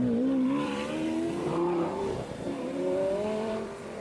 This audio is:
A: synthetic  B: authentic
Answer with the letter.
A